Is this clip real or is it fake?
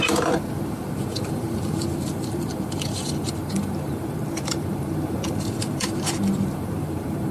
fake